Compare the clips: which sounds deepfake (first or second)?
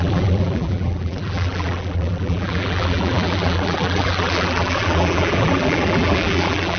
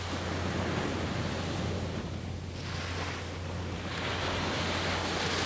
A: first